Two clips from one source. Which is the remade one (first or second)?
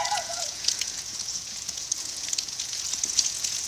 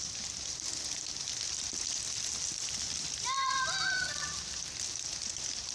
first